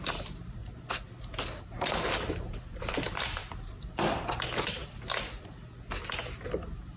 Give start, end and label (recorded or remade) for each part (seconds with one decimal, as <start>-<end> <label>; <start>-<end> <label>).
0.0-0.6 remade; 0.6-1.6 recorded; 1.6-3.4 remade; 3.4-7.0 recorded